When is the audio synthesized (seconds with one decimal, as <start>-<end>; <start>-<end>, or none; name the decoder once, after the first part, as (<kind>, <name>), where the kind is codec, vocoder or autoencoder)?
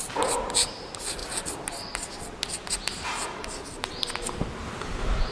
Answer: none